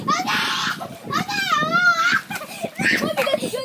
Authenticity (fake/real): fake